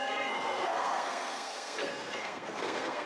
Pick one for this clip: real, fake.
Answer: fake